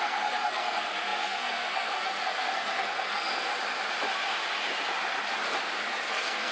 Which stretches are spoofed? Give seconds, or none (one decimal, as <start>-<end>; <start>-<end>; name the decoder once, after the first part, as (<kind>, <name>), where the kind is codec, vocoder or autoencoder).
0.0-3.5 (codec, SNAC); 6.1-6.5